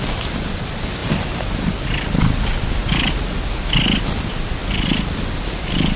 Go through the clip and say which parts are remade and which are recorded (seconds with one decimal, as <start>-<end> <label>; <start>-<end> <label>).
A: 0.0-6.0 recorded